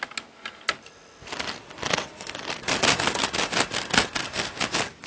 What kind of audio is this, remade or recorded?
recorded